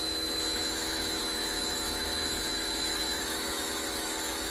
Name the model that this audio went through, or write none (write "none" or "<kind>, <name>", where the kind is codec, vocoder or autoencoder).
autoencoder, DAC-VAE